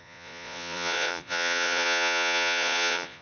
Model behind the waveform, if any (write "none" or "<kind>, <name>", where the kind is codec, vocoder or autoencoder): vocoder, Vocos